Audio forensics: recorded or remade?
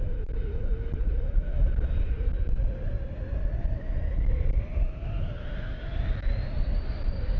recorded